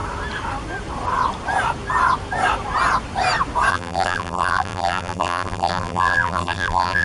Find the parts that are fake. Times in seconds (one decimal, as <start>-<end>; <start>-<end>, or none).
3.7-7.0